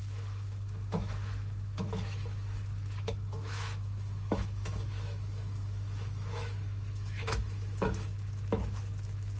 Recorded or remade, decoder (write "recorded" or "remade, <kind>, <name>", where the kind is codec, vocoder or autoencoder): remade, autoencoder, DAC-VAE